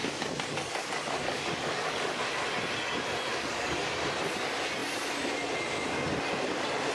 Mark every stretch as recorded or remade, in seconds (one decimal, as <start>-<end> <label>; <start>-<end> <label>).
0.0-2.2 remade; 2.2-3.3 recorded; 3.3-3.9 remade; 3.9-6.9 recorded